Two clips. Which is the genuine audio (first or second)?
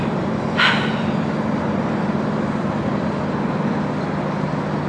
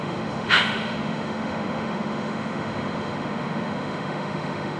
first